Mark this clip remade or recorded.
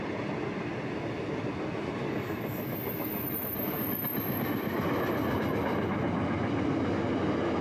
recorded